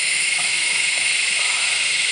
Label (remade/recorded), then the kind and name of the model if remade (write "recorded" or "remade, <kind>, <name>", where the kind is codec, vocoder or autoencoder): remade, autoencoder, DAC-VAE